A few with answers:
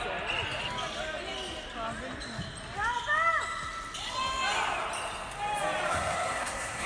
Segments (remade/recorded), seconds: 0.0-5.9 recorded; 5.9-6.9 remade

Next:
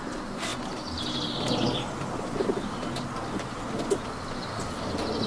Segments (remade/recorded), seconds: 0.0-5.3 recorded

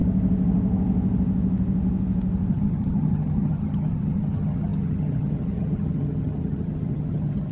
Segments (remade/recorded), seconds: 0.0-2.5 recorded; 2.5-7.5 remade